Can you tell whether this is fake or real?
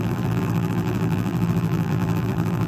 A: fake